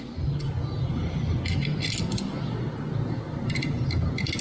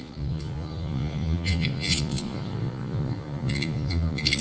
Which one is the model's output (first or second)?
second